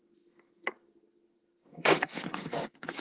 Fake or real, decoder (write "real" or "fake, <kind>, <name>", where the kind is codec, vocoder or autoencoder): fake, codec, SNAC